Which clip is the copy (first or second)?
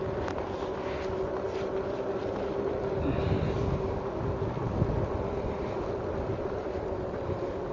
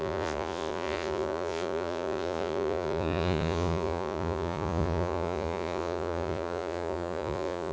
second